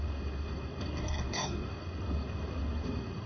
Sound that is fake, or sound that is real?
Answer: fake